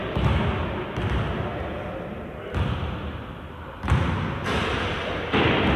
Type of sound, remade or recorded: recorded